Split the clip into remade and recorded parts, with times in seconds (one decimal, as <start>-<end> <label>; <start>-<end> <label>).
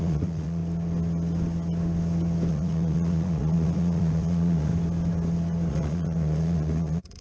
0.0-0.6 remade; 0.6-2.5 recorded; 2.5-4.7 remade; 4.7-5.7 recorded; 5.7-7.2 remade